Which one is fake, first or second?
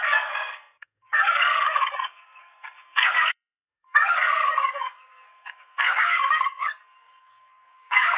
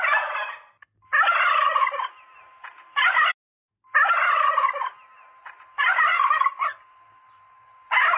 first